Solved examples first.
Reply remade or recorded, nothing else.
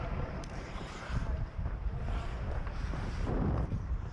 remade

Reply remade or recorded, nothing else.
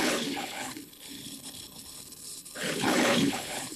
remade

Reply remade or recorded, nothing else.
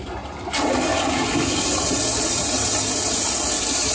remade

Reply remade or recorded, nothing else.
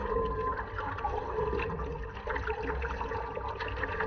recorded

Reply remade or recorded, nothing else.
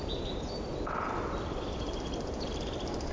recorded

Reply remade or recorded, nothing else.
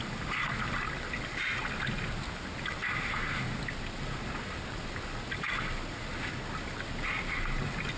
recorded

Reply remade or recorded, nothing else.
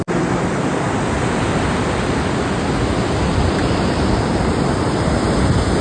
recorded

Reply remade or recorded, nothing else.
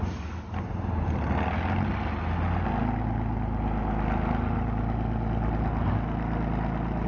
recorded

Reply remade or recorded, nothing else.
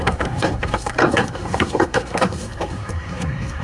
remade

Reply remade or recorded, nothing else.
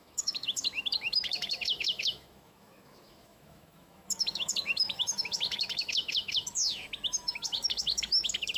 remade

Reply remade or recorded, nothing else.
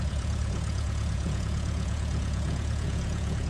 remade